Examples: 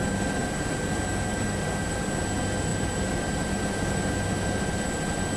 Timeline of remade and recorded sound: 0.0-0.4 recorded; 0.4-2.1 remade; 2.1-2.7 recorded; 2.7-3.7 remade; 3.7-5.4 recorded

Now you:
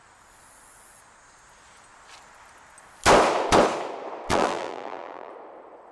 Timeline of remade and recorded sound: 0.0-4.3 recorded; 4.3-5.3 remade; 5.3-5.9 recorded

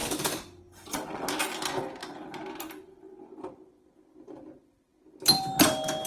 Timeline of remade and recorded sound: 0.0-0.6 remade; 0.6-2.0 recorded; 2.0-3.1 remade; 3.1-6.1 recorded

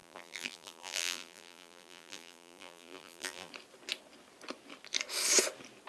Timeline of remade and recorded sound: 0.0-3.5 remade; 3.5-5.9 recorded

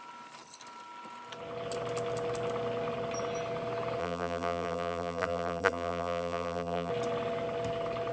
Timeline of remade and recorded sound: 0.0-4.0 recorded; 4.0-6.9 remade; 6.9-8.1 recorded